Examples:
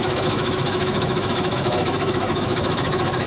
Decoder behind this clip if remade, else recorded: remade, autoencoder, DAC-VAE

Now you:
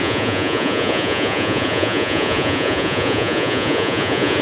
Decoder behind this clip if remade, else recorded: remade, vocoder, Vocos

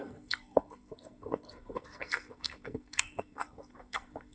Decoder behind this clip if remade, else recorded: remade, codec, SNAC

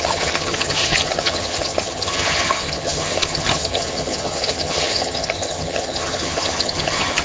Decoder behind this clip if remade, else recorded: remade, vocoder, HiFi-GAN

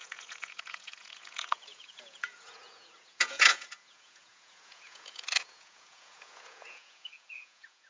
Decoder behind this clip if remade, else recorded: remade, vocoder, Vocos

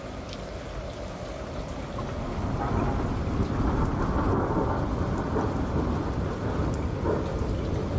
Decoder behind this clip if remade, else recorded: recorded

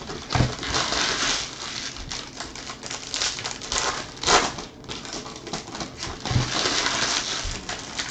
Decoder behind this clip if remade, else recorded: recorded